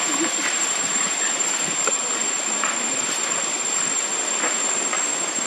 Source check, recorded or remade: remade